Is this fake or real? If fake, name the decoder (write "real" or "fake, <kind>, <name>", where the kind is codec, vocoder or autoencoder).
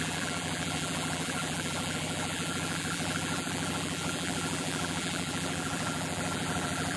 fake, vocoder, BigVGAN v2